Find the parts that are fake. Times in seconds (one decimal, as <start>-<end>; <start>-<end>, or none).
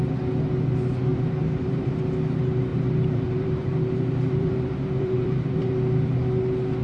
1.1-1.9; 2.7-5.7